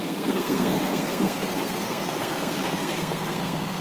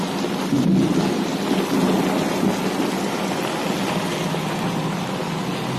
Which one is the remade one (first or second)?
first